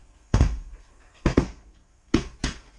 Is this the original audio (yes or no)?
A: no